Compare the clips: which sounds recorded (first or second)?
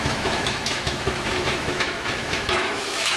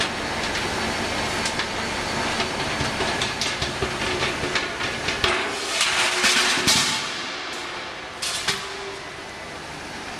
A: second